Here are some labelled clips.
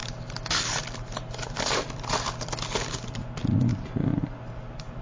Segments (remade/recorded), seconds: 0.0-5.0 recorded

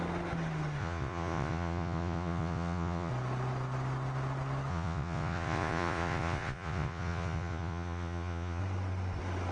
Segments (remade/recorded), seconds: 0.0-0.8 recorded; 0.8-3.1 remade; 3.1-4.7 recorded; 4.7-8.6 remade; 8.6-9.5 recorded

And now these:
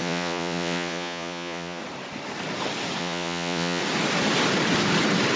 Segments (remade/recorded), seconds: 0.0-1.8 remade; 1.8-3.0 recorded; 3.0-3.8 remade; 3.8-5.4 recorded

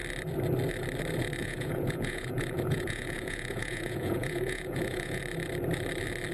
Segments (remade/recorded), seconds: 0.0-1.4 recorded; 1.4-5.2 remade; 5.2-6.3 recorded

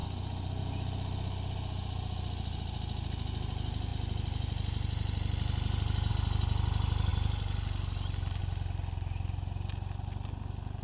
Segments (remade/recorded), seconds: 0.0-10.8 recorded

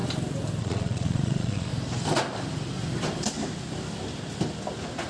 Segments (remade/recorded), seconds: 0.0-0.6 recorded; 0.6-1.7 remade; 1.7-5.1 recorded